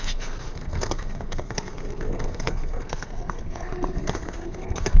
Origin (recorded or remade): remade